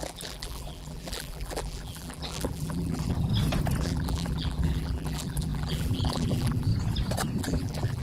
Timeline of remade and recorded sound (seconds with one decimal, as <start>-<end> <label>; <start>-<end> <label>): 0.0-3.3 remade; 3.3-3.8 recorded; 3.8-6.7 remade; 6.7-7.4 recorded; 7.4-8.0 remade